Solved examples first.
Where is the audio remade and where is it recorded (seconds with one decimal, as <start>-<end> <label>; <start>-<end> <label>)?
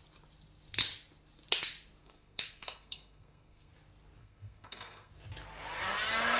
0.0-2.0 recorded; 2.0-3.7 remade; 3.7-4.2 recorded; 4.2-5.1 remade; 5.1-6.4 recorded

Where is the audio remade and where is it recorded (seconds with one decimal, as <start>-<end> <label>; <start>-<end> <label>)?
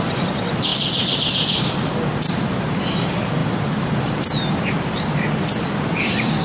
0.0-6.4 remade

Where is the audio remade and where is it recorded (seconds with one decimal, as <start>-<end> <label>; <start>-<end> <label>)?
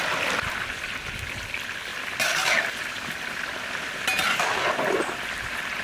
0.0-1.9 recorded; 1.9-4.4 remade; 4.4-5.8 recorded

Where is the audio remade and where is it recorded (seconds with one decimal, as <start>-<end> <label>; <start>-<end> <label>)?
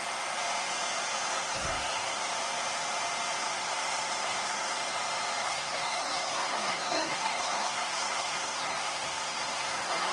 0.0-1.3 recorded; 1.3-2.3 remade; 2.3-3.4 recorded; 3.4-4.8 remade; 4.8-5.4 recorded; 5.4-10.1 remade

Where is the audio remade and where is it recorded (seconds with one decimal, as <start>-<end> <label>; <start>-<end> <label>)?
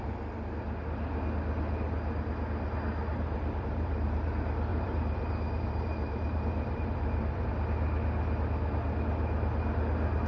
0.0-3.1 recorded; 3.1-4.3 remade; 4.3-4.7 recorded; 4.7-7.5 remade; 7.5-10.3 recorded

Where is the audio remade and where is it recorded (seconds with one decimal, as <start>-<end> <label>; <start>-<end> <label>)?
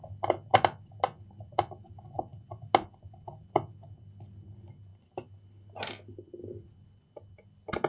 0.0-7.9 recorded